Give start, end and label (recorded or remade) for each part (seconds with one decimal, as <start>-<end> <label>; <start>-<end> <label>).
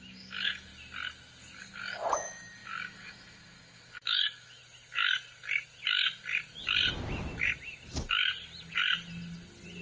0.0-0.7 remade; 0.7-1.6 recorded; 1.6-4.6 remade; 4.6-9.8 recorded